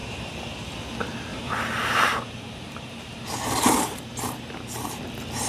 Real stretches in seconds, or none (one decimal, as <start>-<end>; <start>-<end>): 0.0-1.3; 4.4-5.5